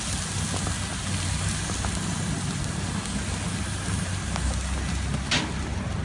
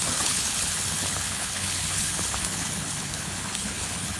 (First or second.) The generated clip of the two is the second